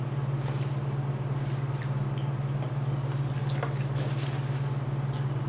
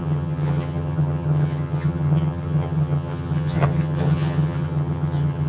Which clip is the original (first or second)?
first